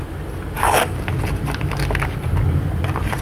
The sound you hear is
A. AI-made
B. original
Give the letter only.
B